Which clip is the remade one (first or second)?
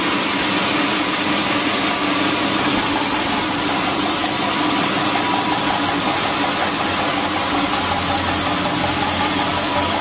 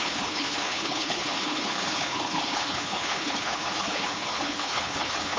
second